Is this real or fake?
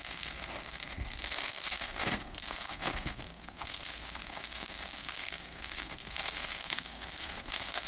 fake